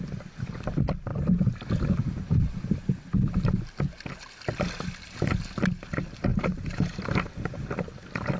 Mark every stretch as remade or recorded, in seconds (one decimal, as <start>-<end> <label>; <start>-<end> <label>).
0.0-6.3 recorded; 6.3-7.3 remade; 7.3-8.4 recorded